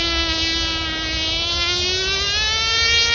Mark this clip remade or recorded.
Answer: recorded